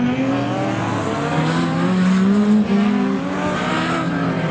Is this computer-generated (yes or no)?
no